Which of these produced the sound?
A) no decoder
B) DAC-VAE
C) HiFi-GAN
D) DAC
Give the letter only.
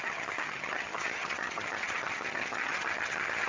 C